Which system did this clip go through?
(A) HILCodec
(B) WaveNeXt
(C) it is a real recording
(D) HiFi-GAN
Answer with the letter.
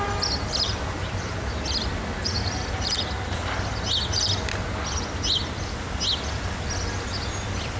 C